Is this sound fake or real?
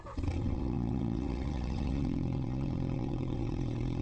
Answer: fake